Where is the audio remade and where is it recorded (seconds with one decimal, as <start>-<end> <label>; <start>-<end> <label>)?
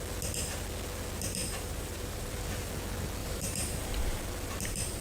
0.0-1.4 recorded; 1.4-2.3 remade; 2.3-3.2 recorded; 3.2-4.2 remade; 4.2-5.0 recorded